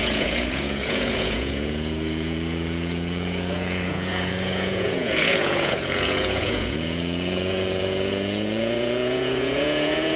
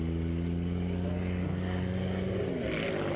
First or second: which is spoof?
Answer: first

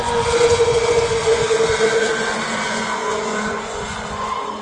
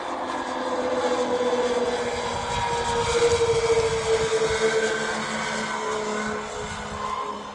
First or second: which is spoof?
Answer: first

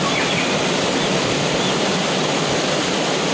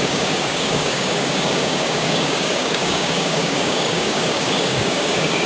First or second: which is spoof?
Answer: second